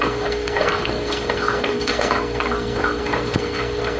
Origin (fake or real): fake